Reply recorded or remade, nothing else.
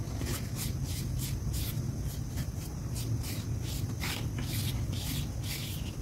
recorded